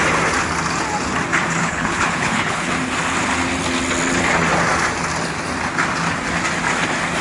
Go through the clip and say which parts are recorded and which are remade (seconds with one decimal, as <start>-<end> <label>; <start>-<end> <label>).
0.0-1.6 recorded; 1.6-2.7 remade; 2.7-7.2 recorded